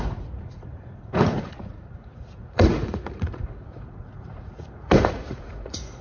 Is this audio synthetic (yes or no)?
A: yes